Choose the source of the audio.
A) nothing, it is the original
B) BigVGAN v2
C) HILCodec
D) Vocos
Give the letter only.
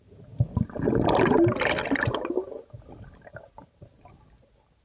A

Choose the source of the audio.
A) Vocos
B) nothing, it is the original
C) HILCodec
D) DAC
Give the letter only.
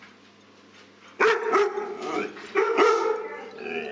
B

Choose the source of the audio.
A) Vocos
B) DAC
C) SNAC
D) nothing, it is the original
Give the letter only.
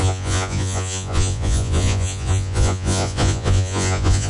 A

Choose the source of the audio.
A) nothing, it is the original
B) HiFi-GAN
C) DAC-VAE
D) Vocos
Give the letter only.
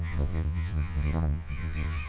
D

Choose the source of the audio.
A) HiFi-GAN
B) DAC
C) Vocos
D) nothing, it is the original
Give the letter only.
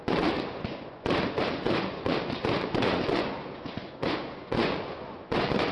C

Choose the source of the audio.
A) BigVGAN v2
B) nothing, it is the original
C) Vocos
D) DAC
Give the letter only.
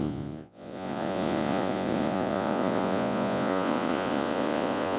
C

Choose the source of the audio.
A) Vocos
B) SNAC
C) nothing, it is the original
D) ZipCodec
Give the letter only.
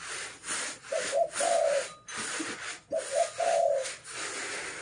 C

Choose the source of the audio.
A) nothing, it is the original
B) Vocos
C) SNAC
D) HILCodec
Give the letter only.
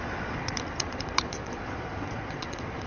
B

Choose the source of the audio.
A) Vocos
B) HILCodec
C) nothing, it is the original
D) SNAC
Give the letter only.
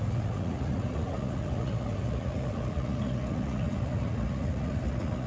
A